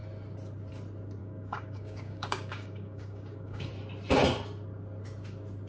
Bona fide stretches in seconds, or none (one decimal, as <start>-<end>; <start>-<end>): 0.0-1.2; 3.7-5.7